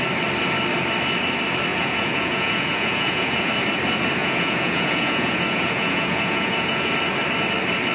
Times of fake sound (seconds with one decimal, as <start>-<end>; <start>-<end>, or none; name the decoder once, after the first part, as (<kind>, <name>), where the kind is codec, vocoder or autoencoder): 1.7-3.5 (vocoder, Vocos); 4.2-6.9